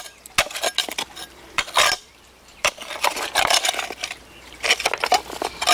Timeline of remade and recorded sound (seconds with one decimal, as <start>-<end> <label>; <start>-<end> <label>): 0.0-0.8 recorded; 0.8-4.2 remade; 4.2-5.7 recorded